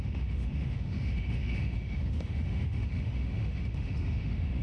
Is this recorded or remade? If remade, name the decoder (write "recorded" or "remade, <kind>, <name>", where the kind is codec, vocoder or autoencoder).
remade, autoencoder, DAC-VAE